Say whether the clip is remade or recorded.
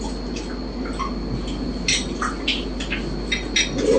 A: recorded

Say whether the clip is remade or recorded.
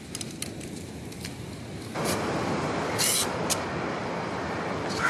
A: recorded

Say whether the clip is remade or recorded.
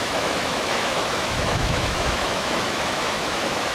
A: remade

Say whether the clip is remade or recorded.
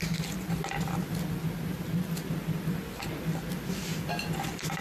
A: recorded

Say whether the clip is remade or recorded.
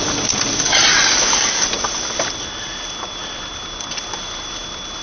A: recorded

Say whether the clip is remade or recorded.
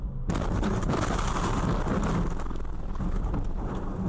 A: recorded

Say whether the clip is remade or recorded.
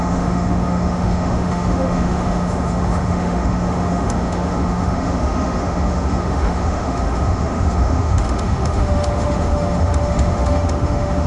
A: remade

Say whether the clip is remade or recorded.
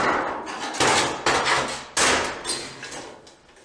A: recorded